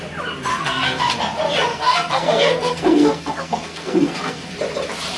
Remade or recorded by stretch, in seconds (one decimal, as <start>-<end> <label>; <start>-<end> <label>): 0.0-0.5 recorded; 0.5-1.0 remade; 1.0-1.7 recorded; 1.7-4.5 remade; 4.5-5.2 recorded